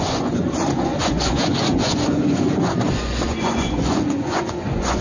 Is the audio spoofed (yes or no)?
yes